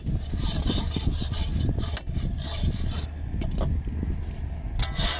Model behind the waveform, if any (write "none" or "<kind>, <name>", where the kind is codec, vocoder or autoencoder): none